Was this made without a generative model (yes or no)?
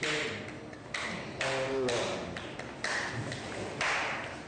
yes